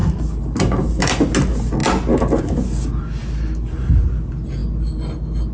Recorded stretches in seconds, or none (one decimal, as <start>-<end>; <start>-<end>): 0.0-5.5